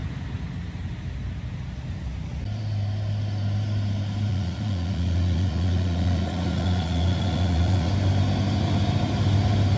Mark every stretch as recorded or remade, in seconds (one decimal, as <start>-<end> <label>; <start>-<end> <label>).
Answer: 0.0-4.3 recorded; 4.3-7.9 remade; 7.9-9.8 recorded

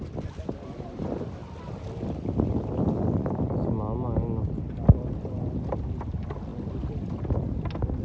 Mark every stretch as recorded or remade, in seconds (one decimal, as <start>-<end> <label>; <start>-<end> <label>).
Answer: 0.0-8.0 recorded

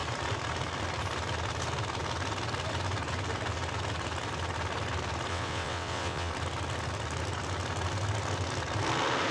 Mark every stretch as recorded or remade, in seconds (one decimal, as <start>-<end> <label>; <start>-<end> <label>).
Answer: 0.0-5.3 recorded; 5.3-6.3 remade; 6.3-9.3 recorded

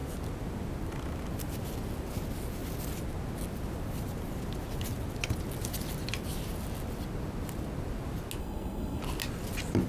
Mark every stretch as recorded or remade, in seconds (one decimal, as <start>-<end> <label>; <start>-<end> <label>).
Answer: 0.0-8.4 recorded; 8.4-9.0 remade; 9.0-9.9 recorded

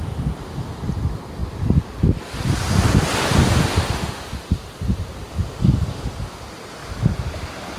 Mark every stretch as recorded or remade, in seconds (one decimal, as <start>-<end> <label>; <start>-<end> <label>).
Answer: 0.0-6.8 recorded; 6.8-7.8 remade

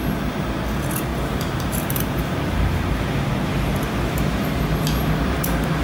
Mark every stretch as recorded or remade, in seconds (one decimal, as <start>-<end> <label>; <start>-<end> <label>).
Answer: 0.0-1.1 recorded; 1.1-4.6 remade; 4.6-5.8 recorded